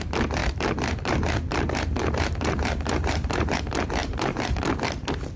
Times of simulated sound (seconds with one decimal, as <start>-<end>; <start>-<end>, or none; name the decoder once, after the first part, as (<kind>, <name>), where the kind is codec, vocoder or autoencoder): 0.4-3.6 (vocoder, BigVGAN v2); 4.0-4.7